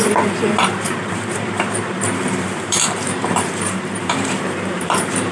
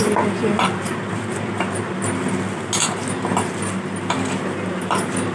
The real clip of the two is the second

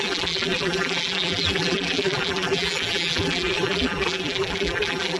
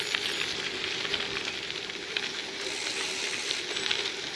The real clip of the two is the second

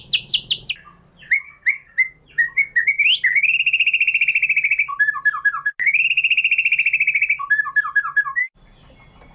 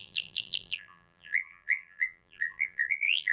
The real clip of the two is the first